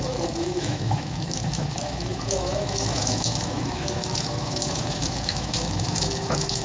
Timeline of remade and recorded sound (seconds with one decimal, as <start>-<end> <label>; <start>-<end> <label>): 0.0-6.6 remade